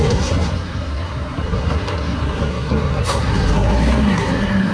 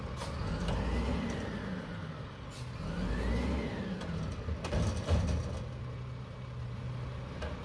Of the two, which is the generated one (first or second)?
first